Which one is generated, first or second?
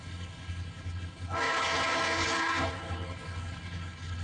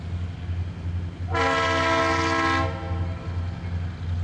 first